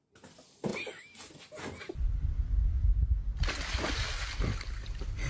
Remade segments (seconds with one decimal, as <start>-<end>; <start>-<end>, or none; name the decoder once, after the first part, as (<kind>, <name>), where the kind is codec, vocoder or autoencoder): none